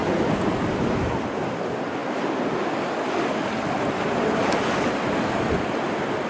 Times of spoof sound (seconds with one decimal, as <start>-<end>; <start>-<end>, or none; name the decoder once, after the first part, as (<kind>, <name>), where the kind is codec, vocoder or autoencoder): 0.0-0.7 (vocoder, BigVGAN v2)